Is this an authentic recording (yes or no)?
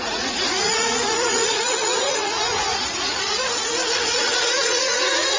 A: no